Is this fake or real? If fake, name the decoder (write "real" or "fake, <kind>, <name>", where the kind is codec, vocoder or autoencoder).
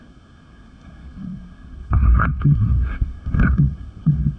fake, codec, SNAC